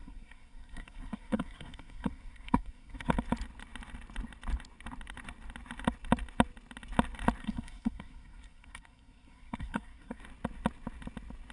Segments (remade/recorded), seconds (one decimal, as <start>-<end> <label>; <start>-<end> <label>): 0.0-3.1 remade; 3.1-7.4 recorded; 7.4-10.2 remade; 10.2-11.5 recorded